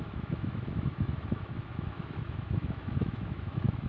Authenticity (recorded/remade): remade